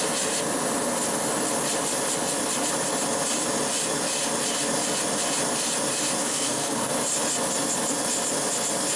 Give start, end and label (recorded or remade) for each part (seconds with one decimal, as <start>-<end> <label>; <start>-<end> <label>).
0.0-6.2 recorded; 6.2-6.9 remade; 6.9-9.0 recorded